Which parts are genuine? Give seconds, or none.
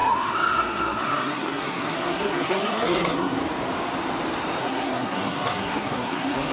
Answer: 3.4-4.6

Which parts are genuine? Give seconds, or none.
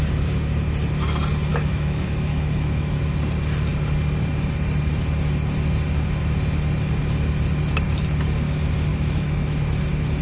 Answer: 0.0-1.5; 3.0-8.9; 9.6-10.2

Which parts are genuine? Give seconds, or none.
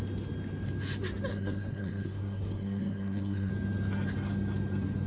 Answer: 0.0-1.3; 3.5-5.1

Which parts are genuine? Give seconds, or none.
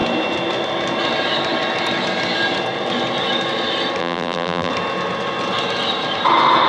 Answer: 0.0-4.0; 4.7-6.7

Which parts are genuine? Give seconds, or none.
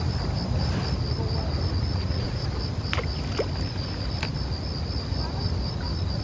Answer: 0.0-1.9; 2.5-6.2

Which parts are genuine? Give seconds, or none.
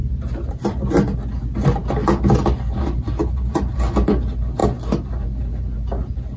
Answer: 0.0-6.4